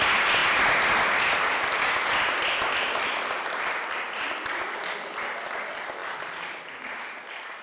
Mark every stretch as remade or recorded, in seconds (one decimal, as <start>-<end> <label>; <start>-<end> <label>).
0.0-0.4 recorded; 0.4-4.9 remade; 4.9-7.6 recorded